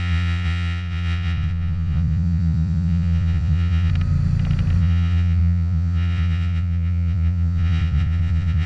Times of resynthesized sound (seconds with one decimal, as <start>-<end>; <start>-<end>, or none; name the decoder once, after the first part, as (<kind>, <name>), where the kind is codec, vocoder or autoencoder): 0.0-3.9 (vocoder, Vocos); 4.8-8.7